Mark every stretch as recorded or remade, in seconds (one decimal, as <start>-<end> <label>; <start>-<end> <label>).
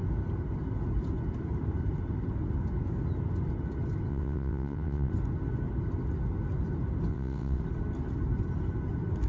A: 0.0-4.1 recorded; 4.1-5.1 remade; 5.1-7.1 recorded; 7.1-7.6 remade; 7.6-9.3 recorded